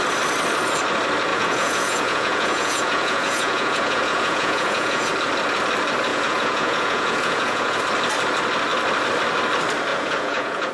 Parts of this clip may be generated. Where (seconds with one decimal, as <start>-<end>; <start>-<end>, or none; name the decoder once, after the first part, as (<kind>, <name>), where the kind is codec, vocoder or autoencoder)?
1.3-5.1 (vocoder, Vocos); 6.1-7.8; 9.9-10.7